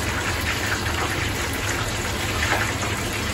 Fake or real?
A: real